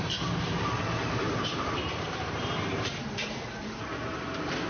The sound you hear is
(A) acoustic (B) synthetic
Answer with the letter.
B